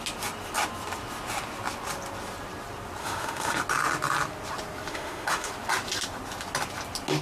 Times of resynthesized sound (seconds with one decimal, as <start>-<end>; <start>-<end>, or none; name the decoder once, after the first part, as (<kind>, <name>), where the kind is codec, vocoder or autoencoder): 3.0-3.6 (autoencoder, DAC-VAE); 4.9-5.5